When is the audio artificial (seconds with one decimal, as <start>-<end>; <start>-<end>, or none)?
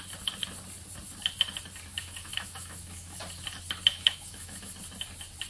1.9-3.2; 3.9-4.7